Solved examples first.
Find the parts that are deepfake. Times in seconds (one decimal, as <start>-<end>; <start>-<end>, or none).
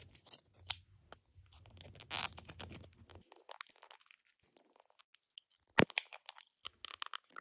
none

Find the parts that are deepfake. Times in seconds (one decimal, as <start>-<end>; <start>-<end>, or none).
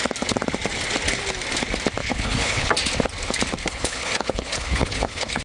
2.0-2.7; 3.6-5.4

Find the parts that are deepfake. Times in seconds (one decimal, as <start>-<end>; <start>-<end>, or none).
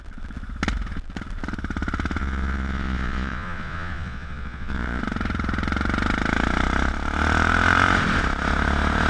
2.2-5.0